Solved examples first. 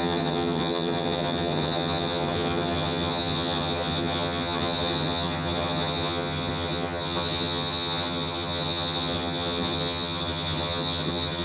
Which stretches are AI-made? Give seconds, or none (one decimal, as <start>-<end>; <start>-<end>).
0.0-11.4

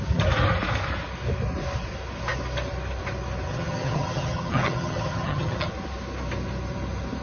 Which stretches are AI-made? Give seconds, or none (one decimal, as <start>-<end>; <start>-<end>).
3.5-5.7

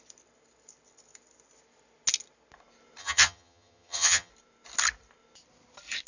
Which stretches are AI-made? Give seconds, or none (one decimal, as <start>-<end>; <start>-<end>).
3.0-4.3

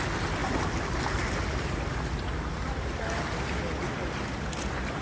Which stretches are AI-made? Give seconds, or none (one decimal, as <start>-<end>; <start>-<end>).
none

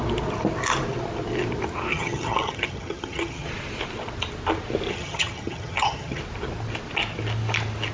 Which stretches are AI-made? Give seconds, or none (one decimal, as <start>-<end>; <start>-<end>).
1.9-3.5; 4.9-6.2

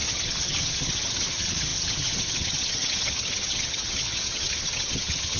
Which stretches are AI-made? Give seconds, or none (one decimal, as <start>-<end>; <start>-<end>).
0.0-5.4

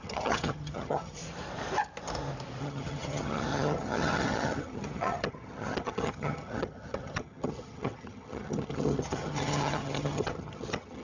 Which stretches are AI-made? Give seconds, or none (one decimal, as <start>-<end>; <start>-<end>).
0.0-1.2; 2.6-11.0

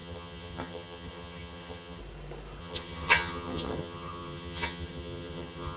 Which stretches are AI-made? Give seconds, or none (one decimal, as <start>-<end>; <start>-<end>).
0.0-2.0; 2.6-5.8